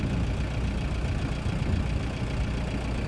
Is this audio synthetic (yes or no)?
no